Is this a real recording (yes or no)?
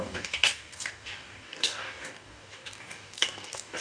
no